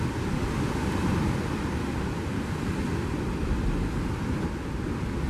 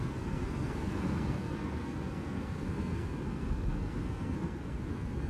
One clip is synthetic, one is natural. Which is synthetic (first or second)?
second